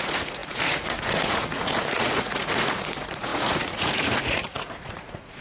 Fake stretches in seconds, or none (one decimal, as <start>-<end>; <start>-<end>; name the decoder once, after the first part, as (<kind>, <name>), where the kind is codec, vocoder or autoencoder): 0.0-5.4 (vocoder, Vocos)